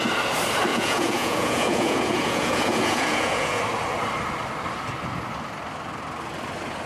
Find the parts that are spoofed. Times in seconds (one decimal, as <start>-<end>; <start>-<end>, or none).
0.7-3.6